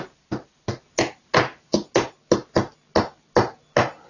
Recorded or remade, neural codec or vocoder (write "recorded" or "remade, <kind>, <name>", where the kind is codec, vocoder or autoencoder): recorded